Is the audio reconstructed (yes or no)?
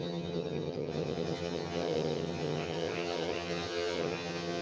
yes